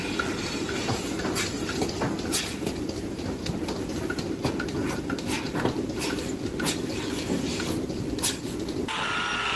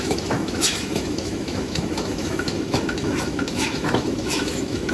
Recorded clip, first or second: first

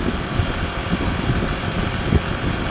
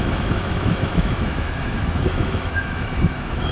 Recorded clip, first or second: first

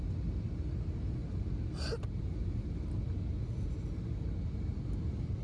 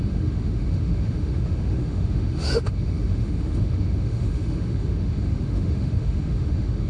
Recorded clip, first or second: first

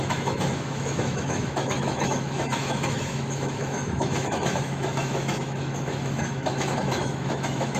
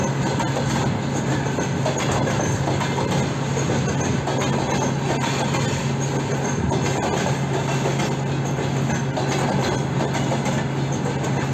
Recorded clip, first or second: second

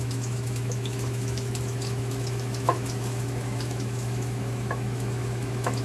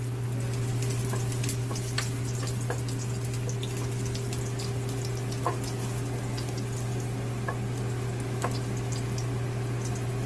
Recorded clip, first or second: second